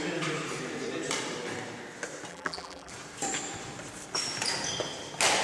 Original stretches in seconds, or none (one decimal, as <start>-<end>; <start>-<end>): 0.0-2.3; 2.9-5.4